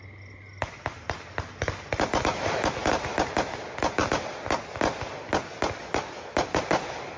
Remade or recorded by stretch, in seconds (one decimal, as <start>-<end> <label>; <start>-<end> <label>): 0.0-7.2 recorded